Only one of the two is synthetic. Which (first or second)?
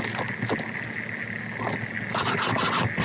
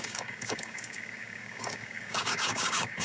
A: second